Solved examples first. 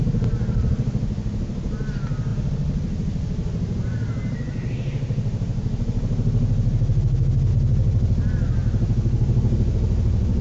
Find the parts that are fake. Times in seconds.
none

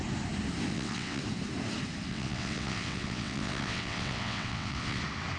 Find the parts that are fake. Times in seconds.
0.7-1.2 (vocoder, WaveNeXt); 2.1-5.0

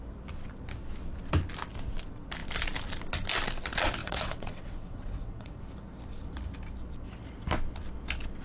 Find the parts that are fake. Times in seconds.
4.0-5.6 (vocoder, WaveNeXt)

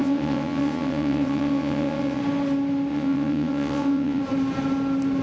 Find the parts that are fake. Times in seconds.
0.0-2.2 (vocoder, WaveNeXt); 2.9-4.2